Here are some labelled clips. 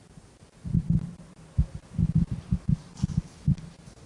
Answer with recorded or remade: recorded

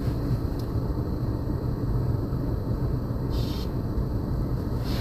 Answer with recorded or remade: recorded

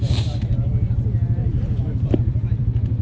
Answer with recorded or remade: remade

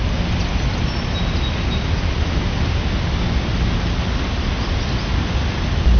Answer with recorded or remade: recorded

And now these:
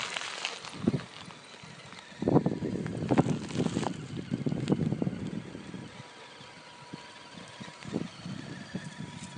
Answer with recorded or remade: recorded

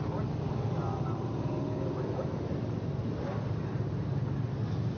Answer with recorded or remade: recorded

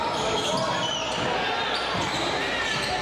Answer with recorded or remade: recorded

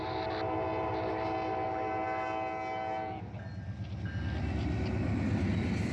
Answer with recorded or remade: recorded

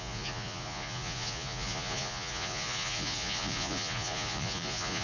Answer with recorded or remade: remade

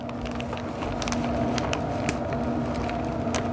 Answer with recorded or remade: recorded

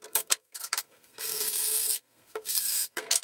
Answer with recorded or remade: remade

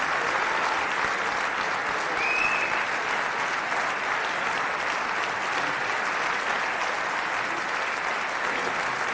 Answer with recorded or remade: recorded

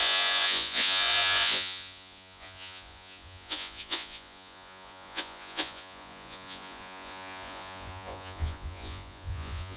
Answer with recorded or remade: remade